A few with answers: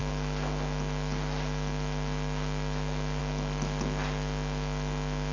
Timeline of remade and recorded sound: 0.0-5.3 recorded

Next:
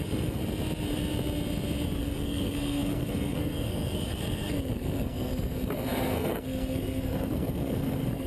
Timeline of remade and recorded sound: 0.0-0.4 remade; 0.4-2.0 recorded; 2.0-8.3 remade

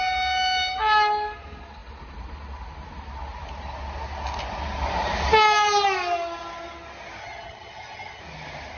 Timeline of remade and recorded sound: 0.0-7.2 recorded; 7.2-8.2 remade; 8.2-8.8 recorded

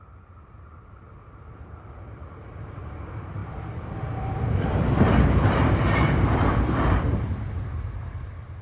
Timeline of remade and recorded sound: 0.0-8.6 remade

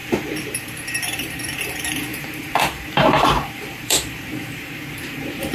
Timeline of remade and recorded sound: 0.0-5.5 remade

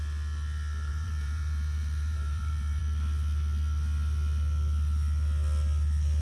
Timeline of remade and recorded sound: 0.0-0.9 recorded; 0.9-2.8 remade; 2.8-6.2 recorded

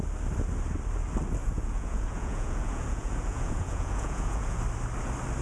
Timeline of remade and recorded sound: 0.0-1.4 recorded; 1.4-4.6 remade; 4.6-5.4 recorded